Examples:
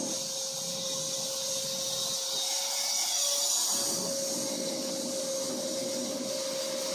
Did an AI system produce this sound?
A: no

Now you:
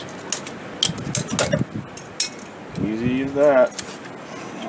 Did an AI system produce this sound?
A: no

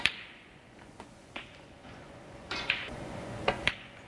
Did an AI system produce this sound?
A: yes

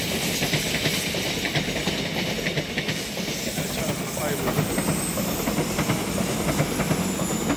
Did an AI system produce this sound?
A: no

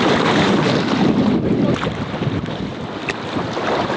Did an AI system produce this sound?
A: no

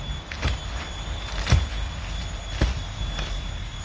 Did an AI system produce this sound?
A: no